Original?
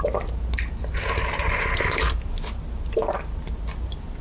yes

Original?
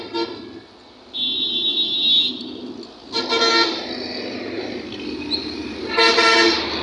yes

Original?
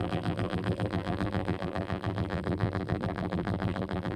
no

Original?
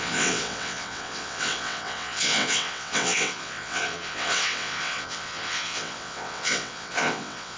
no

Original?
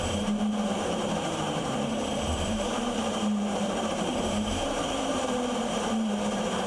no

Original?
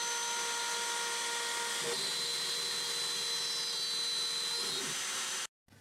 yes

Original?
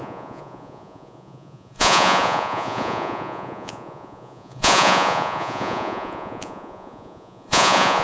no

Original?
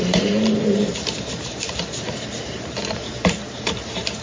no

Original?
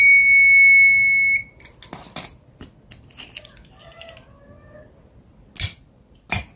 yes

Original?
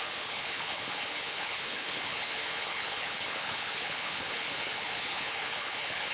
no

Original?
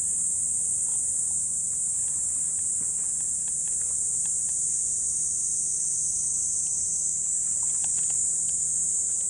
yes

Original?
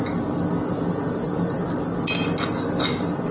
yes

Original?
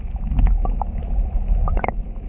yes